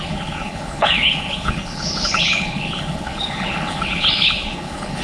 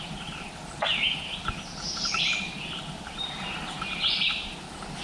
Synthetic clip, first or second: first